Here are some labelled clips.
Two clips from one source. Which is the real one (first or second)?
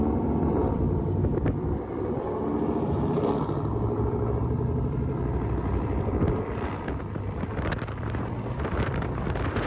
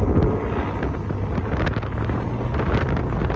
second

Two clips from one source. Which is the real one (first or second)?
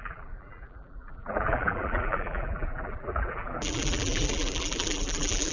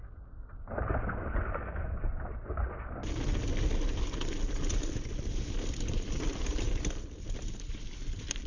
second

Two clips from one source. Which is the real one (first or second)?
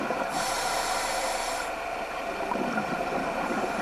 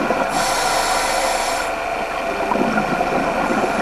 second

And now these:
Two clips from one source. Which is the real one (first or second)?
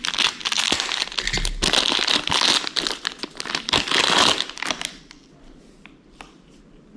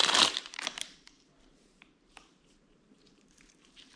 first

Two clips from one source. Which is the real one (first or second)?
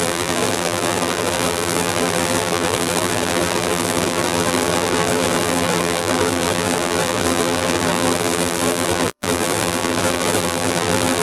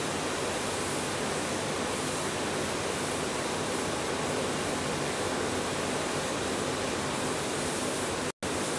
second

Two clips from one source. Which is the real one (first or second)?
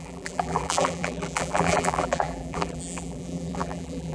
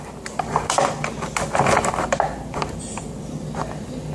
second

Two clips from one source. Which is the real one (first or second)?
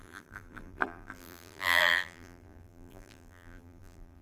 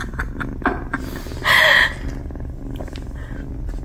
second